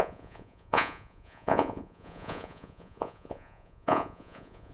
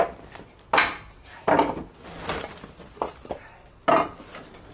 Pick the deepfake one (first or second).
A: first